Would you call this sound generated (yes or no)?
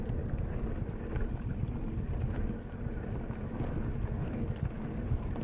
no